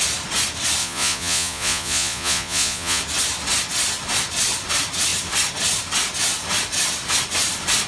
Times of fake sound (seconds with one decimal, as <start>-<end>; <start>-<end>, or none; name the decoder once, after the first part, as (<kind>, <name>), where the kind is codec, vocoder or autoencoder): 0.8-3.0 (vocoder, Vocos)